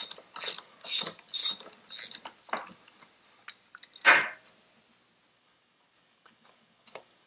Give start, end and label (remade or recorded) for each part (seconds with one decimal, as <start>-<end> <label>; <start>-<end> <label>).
0.0-0.6 recorded; 0.6-1.4 remade; 1.4-5.3 recorded; 5.3-7.3 remade